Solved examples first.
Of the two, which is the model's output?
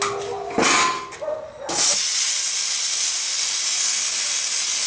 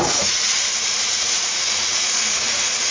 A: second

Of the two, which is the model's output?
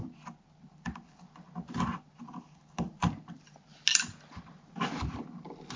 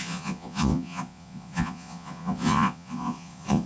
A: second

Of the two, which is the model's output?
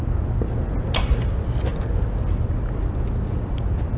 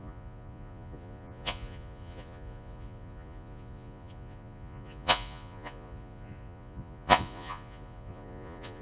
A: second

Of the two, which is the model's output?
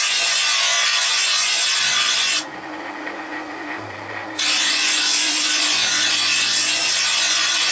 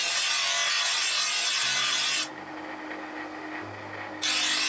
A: first